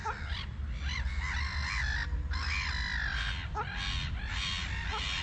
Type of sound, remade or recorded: recorded